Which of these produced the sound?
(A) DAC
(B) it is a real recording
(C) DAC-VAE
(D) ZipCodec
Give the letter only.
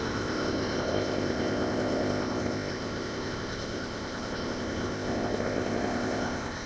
D